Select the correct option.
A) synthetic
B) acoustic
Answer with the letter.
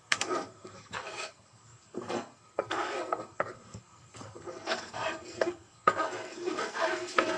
A